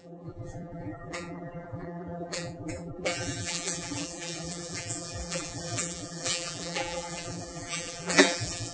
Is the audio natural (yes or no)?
no